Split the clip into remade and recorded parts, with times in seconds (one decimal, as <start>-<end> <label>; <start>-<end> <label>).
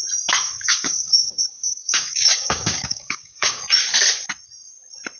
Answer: 0.0-0.5 recorded; 0.5-3.6 remade; 3.6-5.2 recorded